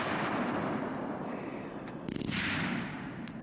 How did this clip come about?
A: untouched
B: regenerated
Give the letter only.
A